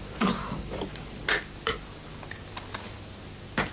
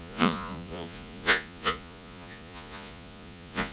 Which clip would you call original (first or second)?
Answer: first